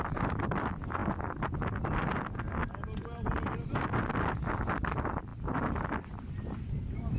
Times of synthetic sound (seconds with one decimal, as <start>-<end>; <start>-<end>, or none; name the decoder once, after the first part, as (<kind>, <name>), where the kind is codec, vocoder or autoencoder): 5.3-6.8 (vocoder, BigVGAN v2)